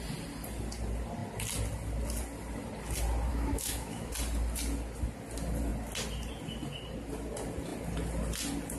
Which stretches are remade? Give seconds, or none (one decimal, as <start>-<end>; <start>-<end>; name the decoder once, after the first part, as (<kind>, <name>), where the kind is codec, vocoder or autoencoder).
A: 3.3-4.1 (autoencoder, DAC-VAE)